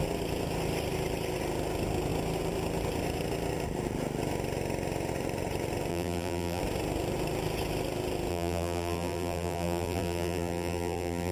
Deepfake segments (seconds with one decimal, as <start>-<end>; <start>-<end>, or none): 5.9-6.6; 8.3-11.3